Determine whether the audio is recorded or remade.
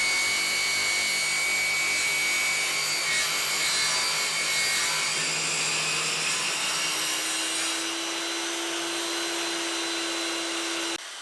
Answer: recorded